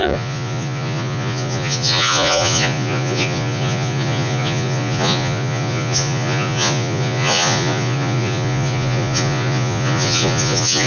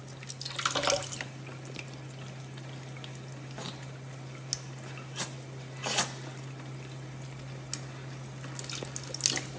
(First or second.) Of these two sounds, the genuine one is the second